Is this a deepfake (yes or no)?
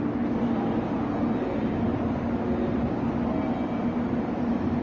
no